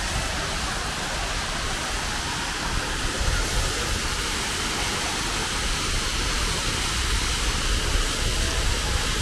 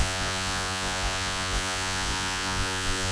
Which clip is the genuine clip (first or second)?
first